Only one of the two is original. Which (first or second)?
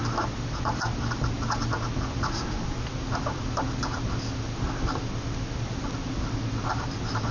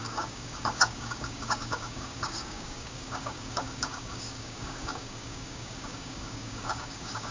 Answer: first